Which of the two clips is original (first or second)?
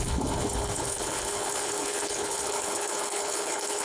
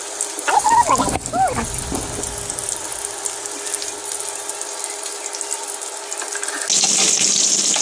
second